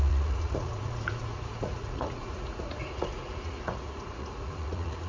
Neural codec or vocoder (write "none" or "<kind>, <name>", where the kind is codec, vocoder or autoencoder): vocoder, Vocos